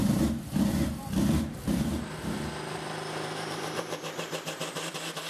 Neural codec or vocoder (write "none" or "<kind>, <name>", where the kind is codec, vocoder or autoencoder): vocoder, BigVGAN v2